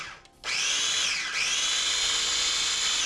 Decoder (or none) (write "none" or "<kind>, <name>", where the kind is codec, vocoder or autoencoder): none